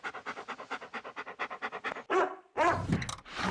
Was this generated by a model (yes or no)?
no